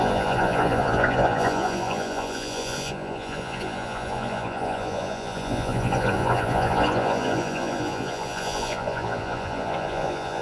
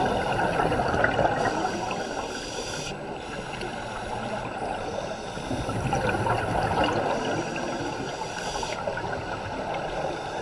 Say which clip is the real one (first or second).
second